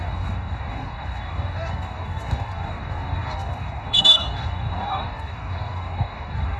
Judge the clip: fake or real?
fake